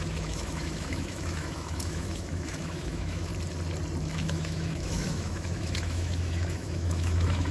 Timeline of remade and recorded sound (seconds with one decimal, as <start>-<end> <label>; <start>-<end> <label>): 0.0-3.3 remade; 3.3-4.0 recorded; 4.0-7.5 remade